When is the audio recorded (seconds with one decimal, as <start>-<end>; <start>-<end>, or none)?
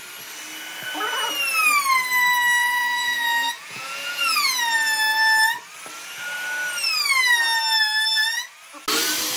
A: 0.0-2.6; 4.6-9.4